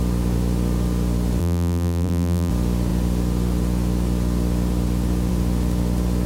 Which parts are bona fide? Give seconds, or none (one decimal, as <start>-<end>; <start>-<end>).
0.0-1.4; 2.5-6.3

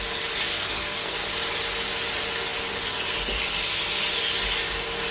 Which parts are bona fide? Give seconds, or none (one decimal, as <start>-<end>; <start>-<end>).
0.0-0.5; 1.2-5.1

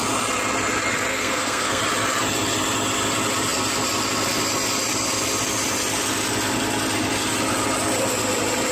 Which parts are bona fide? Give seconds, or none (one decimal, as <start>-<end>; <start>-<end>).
0.0-1.1; 1.8-8.7

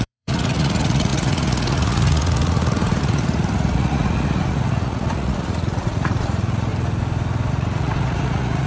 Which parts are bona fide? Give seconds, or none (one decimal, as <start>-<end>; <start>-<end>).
6.7-7.5

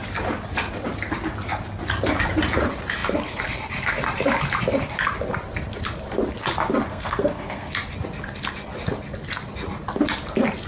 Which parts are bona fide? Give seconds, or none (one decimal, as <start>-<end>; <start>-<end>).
0.0-6.9; 7.7-10.7

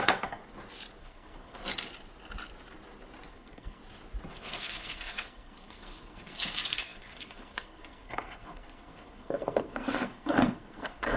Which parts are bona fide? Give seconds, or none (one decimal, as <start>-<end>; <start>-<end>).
0.4-1.0; 1.6-3.3; 3.8-4.3

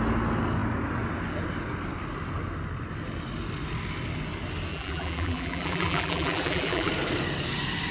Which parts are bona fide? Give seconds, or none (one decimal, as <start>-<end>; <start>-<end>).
0.0-4.7; 6.9-7.9

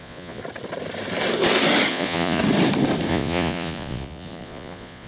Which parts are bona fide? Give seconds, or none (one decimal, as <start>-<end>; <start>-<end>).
0.4-1.9; 2.4-3.1